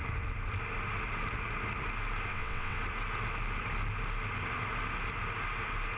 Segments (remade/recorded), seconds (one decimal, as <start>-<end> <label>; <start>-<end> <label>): 0.0-2.3 recorded; 2.3-2.8 remade; 2.8-6.0 recorded